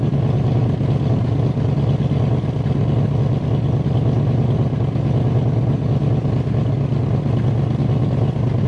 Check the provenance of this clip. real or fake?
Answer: real